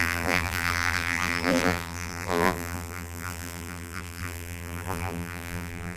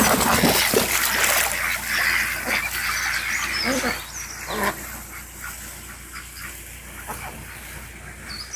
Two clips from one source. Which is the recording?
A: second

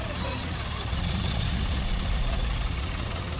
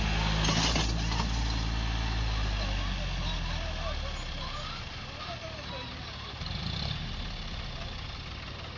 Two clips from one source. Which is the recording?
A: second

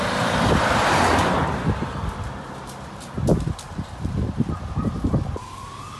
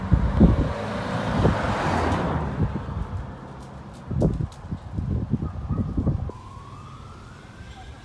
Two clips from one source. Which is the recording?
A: second